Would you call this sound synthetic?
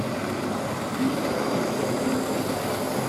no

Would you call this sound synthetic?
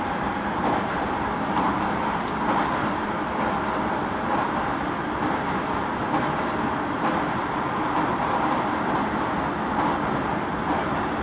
yes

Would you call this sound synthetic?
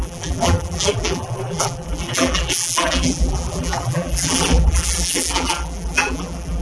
yes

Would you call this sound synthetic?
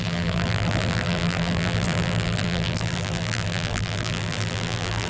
yes